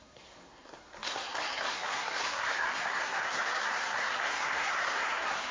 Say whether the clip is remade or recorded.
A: remade